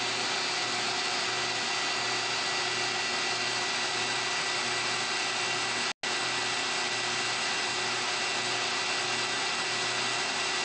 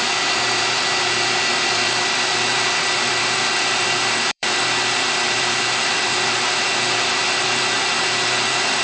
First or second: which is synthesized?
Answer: second